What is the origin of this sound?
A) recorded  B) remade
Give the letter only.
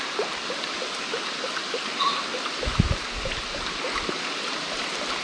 A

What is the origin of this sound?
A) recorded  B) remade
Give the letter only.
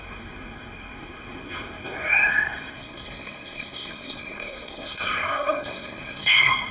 B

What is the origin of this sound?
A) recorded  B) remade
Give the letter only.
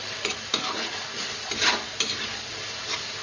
A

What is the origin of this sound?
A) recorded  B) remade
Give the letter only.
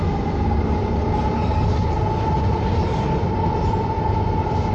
A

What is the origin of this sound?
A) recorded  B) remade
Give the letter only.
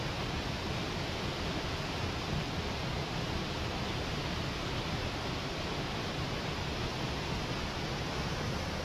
A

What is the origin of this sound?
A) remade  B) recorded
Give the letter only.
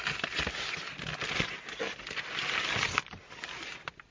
B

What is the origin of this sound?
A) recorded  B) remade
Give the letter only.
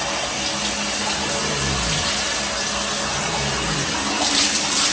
A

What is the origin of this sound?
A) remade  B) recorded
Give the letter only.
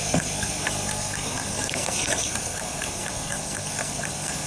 A